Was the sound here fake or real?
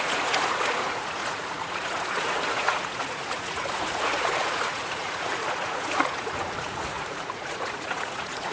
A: fake